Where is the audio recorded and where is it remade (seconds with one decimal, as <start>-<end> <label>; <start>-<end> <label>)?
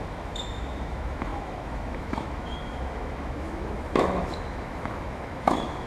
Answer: 0.0-5.9 remade